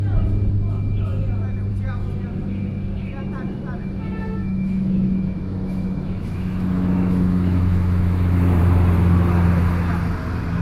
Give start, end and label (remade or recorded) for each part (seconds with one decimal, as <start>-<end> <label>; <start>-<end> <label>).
0.0-4.4 recorded; 4.4-8.6 remade; 8.6-10.6 recorded